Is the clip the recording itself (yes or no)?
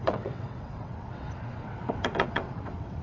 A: no